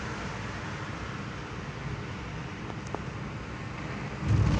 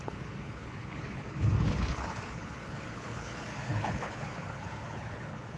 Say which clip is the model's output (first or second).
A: second